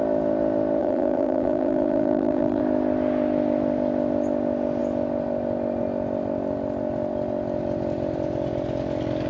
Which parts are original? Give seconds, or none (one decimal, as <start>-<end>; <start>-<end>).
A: 0.0-0.8; 2.6-9.3